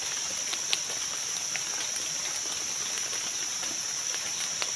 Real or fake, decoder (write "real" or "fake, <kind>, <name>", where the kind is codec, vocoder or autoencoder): real